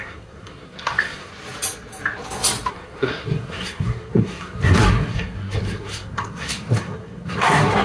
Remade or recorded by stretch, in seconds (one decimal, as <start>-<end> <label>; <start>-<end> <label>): 0.0-1.3 remade; 1.3-2.7 recorded; 2.7-7.8 remade